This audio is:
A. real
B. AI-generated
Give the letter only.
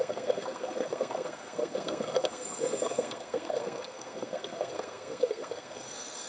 B